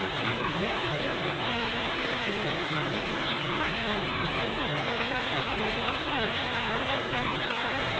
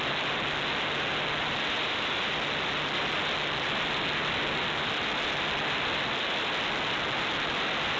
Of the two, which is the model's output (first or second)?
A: first